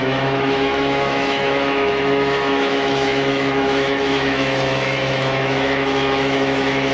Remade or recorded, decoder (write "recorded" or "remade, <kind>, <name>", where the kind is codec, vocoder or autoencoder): remade, autoencoder, DAC-VAE